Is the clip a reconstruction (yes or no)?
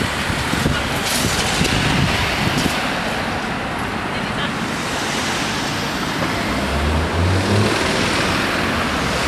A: no